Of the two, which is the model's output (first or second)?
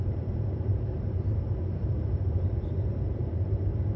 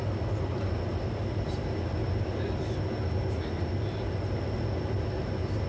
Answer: first